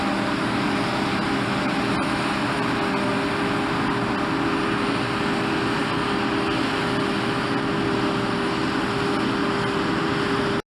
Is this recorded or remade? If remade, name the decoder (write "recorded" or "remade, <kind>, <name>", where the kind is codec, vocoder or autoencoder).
recorded